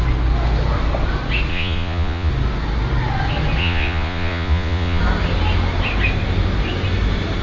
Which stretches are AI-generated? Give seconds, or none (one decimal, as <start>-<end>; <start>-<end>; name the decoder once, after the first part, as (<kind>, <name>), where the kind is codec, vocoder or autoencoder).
1.5-2.3 (vocoder, Vocos); 3.6-5.0